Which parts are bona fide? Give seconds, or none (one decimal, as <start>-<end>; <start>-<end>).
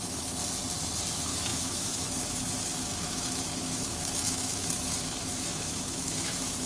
0.4-1.1